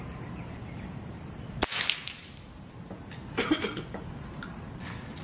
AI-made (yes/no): yes